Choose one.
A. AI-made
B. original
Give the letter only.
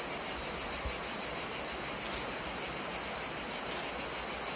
B